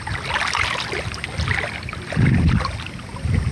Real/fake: real